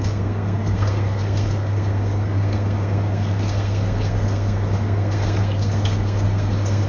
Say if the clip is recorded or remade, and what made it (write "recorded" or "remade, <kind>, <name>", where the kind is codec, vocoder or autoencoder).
remade, codec, SNAC